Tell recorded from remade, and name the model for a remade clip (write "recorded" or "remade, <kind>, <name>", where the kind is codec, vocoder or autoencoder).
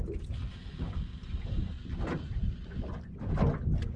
recorded